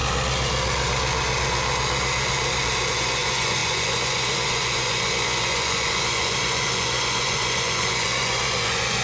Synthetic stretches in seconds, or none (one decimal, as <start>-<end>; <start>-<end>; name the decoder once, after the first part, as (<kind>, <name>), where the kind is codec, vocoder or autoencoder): 2.9-9.0 (vocoder, Vocos)